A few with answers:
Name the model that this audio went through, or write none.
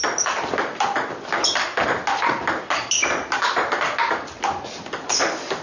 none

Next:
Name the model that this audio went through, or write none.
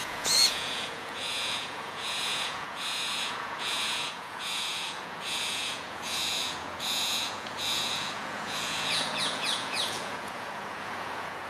vocoder, Vocos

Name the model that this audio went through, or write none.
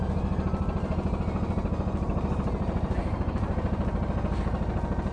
none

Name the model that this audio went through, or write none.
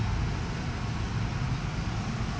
none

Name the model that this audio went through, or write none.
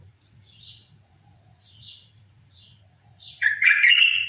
vocoder, Vocos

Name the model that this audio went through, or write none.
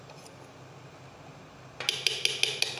none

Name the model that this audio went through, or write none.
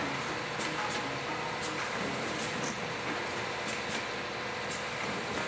none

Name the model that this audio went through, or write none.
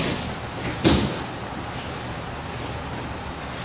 none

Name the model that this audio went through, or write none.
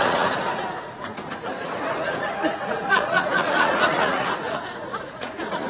vocoder, Vocos